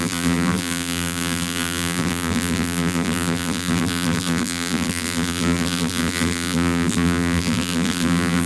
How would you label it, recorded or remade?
remade